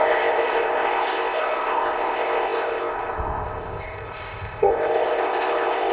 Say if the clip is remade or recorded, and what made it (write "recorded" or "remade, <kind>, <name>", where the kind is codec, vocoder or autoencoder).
remade, codec, ZipCodec